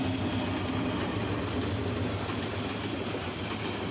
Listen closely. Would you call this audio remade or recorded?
recorded